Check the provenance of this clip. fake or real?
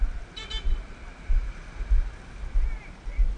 real